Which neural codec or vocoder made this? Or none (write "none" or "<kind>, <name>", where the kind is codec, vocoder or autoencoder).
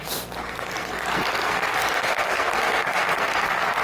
codec, SNAC